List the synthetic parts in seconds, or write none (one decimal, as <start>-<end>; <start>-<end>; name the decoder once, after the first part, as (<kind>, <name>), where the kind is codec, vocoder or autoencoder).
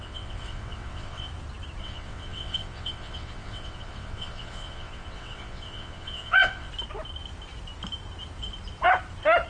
0.0-1.3 (vocoder, WaveNeXt); 1.8-6.7